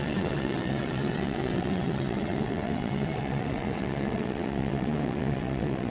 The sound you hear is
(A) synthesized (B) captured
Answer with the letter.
A